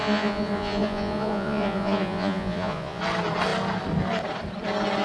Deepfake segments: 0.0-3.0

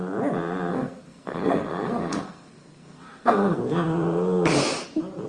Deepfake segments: 0.7-3.6

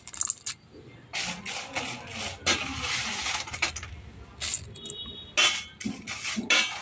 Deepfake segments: none

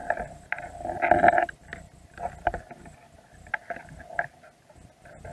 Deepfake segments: 0.0-0.5

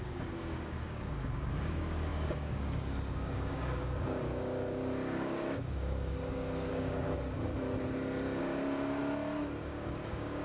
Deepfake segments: 0.0-7.5; 8.4-9.0; 9.6-10.4

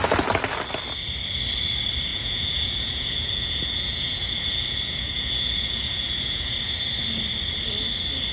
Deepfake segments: 2.1-6.5